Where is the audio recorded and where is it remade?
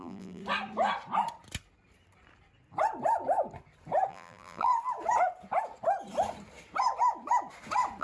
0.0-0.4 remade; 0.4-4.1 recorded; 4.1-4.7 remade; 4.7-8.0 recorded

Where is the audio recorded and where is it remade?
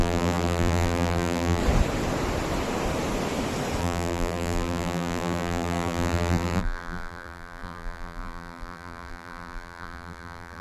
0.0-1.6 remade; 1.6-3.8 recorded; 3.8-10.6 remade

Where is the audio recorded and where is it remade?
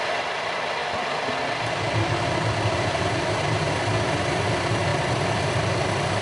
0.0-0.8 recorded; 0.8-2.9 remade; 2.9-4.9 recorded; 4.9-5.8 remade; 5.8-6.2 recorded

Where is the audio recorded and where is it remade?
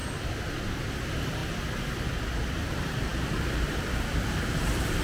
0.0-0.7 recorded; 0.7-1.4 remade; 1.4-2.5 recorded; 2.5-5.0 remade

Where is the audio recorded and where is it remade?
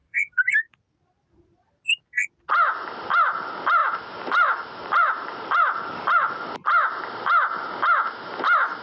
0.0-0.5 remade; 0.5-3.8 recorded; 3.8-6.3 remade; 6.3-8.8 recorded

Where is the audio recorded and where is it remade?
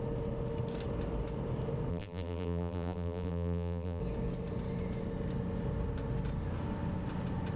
0.0-1.9 recorded; 1.9-4.0 remade; 4.0-7.6 recorded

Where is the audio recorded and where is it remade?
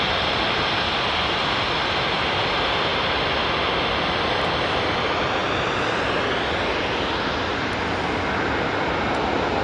0.0-9.6 recorded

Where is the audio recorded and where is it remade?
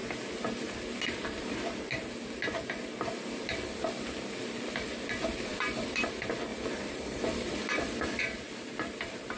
0.0-5.5 recorded; 5.5-6.1 remade; 6.1-6.5 recorded; 6.5-8.2 remade; 8.2-9.4 recorded